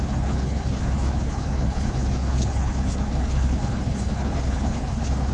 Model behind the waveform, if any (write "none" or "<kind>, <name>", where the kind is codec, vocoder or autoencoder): codec, HILCodec